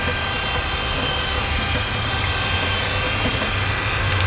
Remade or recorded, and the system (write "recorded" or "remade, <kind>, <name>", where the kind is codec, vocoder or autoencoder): recorded